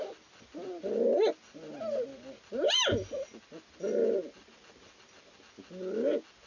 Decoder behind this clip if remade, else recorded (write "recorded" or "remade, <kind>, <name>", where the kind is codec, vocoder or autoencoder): recorded